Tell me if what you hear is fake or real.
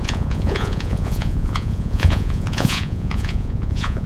fake